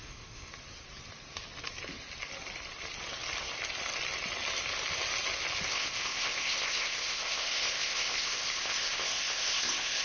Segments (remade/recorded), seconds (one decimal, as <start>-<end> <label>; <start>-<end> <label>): 0.0-0.5 remade; 0.5-5.7 recorded; 5.7-10.0 remade